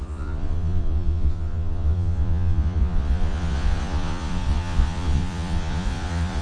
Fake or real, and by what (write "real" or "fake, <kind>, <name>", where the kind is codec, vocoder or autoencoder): fake, vocoder, Vocos